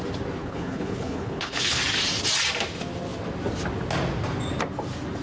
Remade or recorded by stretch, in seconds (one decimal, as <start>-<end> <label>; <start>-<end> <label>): 0.0-0.4 recorded; 0.4-1.8 remade; 1.8-5.2 recorded

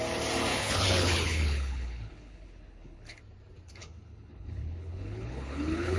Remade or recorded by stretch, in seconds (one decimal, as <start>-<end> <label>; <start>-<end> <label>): 0.0-0.5 recorded; 0.5-3.2 remade; 3.2-3.8 recorded; 3.8-6.0 remade

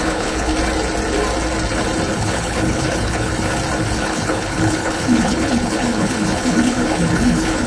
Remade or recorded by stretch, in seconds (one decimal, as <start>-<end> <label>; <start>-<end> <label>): 0.0-0.5 remade; 0.5-2.2 recorded; 2.2-3.3 remade; 3.3-3.9 recorded; 3.9-7.7 remade

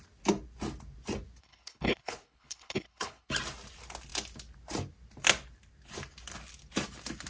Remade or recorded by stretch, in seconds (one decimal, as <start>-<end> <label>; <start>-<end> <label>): 0.0-1.4 recorded; 1.4-3.3 remade; 3.3-7.3 recorded

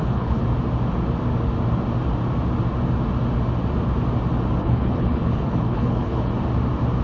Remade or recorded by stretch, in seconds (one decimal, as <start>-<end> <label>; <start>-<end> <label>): 0.0-0.4 remade; 0.4-4.6 recorded; 4.6-6.3 remade; 6.3-7.0 recorded